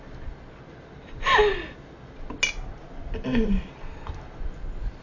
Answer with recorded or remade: recorded